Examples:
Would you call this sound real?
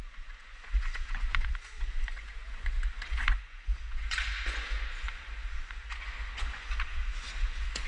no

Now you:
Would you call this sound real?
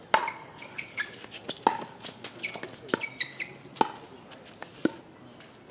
yes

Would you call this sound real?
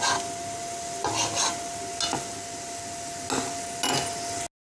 yes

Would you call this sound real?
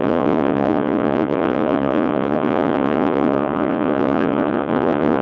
no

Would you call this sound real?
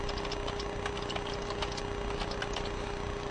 yes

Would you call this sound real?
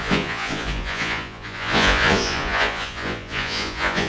no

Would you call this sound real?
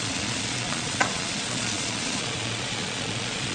no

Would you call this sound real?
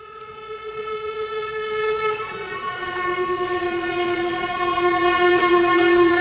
no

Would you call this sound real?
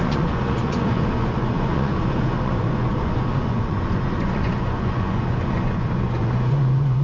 no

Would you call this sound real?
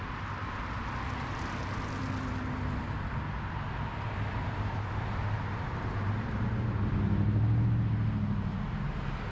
yes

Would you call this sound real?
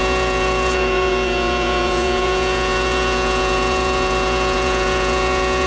no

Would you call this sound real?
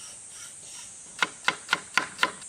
yes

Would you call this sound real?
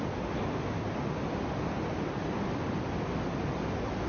yes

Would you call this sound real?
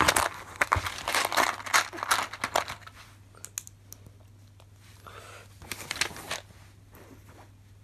yes